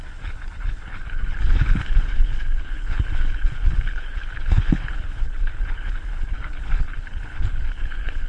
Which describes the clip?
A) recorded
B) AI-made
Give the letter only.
B